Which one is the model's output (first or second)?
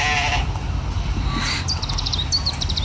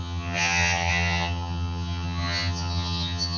second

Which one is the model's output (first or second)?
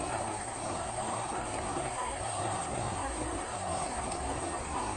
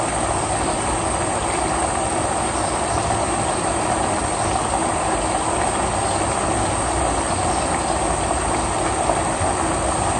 first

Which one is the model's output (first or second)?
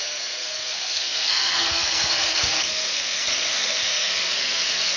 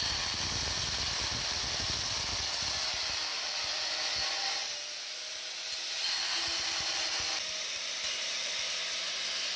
first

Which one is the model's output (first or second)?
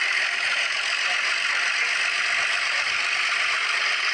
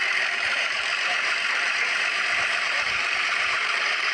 second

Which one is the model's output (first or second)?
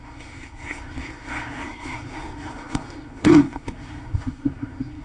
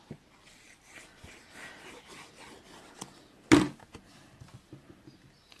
first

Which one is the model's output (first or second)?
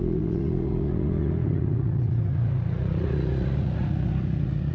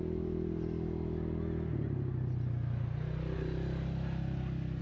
first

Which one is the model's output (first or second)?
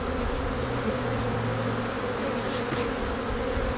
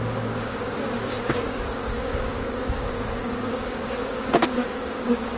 second